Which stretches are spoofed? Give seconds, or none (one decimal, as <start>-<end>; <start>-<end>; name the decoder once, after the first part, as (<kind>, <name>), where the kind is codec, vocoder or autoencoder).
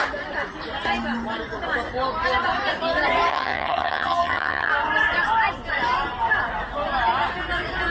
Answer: 3.3-4.7 (vocoder, HiFi-GAN)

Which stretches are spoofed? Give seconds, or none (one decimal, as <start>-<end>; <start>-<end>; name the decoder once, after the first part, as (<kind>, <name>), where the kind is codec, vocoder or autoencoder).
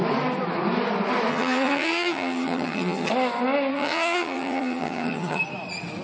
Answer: 1.3-3.1 (vocoder, HiFi-GAN); 3.7-5.4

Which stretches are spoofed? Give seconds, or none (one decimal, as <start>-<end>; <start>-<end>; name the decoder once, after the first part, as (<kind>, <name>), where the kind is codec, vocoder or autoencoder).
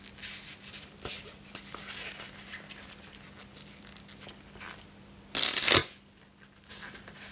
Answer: none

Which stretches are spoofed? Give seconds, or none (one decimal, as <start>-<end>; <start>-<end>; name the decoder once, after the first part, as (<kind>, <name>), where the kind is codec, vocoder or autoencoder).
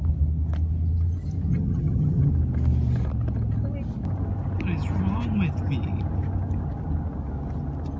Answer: 1.5-2.3 (vocoder, HiFi-GAN)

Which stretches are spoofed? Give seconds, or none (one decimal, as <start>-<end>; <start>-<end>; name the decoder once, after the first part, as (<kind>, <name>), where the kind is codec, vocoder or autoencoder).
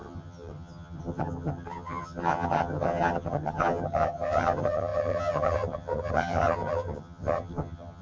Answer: 0.0-8.0 (vocoder, HiFi-GAN)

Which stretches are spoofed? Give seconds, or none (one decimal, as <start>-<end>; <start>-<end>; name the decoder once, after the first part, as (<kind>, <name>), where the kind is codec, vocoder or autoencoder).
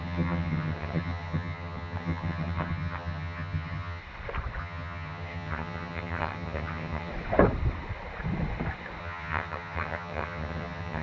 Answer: 0.0-4.0 (vocoder, HiFi-GAN); 4.6-7.1; 9.0-11.0